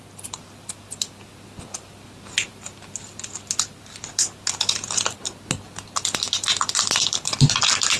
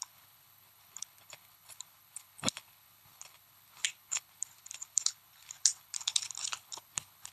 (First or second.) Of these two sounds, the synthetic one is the second